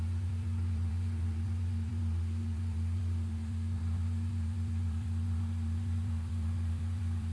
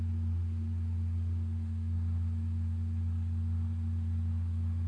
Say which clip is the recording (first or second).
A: second